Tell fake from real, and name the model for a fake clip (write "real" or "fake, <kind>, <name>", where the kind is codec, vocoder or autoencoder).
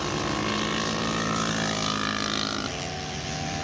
real